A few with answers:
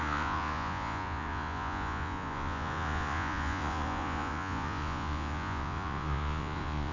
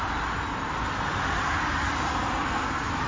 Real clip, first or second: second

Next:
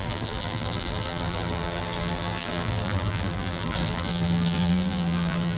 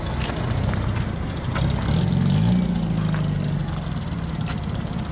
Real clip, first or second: second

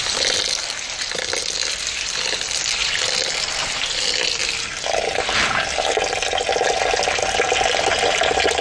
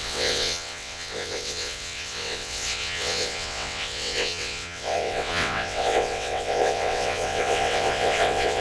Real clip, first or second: first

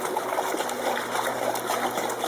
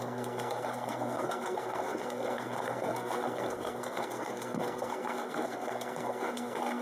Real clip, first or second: first